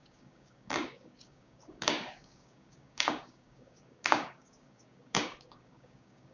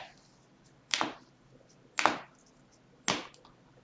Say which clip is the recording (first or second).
second